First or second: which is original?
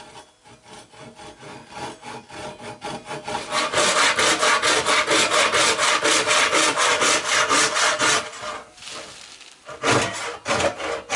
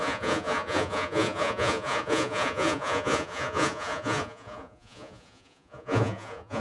first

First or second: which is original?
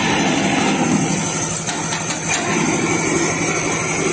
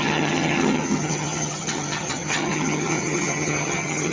first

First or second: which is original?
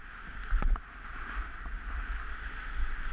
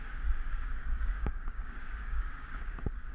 first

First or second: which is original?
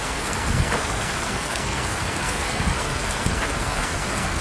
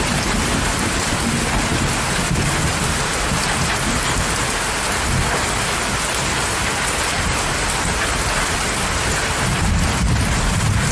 second